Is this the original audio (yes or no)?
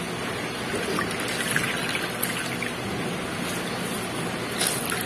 yes